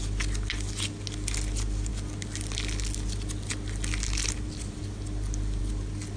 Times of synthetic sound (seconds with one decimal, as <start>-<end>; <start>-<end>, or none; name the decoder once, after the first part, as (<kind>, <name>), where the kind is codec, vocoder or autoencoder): none